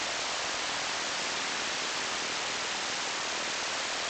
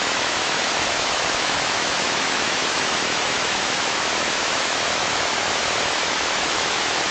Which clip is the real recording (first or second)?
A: first